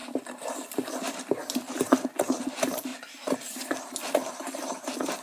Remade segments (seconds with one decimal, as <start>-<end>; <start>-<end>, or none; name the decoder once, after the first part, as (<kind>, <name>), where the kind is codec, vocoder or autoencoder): none